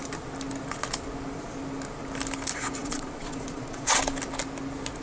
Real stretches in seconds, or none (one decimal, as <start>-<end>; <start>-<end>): 0.0-2.8; 4.0-5.0

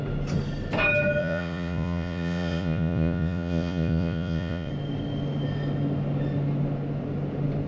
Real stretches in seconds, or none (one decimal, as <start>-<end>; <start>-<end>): 0.0-1.2; 4.7-7.7

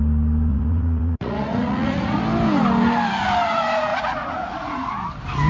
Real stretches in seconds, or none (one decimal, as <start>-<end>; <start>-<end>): 0.0-0.5; 2.2-3.9; 4.9-5.5

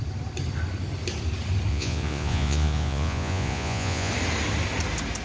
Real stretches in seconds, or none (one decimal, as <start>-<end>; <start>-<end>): 0.0-1.7; 4.1-5.2

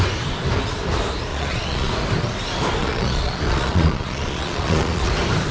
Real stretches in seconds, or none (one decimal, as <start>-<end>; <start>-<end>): 0.0-1.3; 1.9-2.8; 5.1-5.5

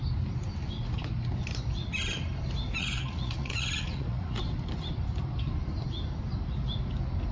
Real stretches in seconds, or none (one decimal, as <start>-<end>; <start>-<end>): 0.0-2.8; 4.4-7.3

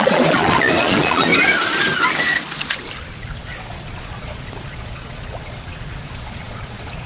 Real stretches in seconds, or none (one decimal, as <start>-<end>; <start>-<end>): 1.3-3.2